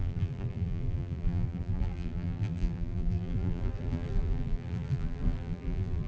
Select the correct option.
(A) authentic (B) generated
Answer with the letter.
B